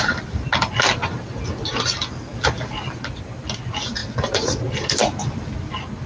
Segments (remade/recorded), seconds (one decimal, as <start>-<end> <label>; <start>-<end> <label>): 0.0-2.3 recorded; 2.3-3.2 remade; 3.2-6.1 recorded